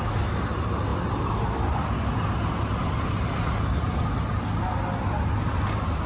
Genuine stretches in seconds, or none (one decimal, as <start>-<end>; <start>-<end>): 0.0-6.1